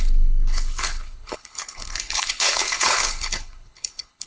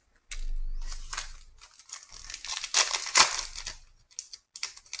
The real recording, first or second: second